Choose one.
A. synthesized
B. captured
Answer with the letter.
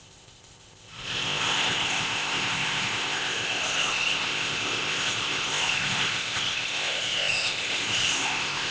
A